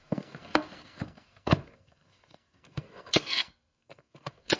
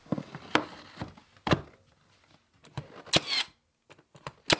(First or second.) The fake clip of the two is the first